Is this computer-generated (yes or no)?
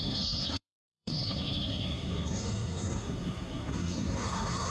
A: yes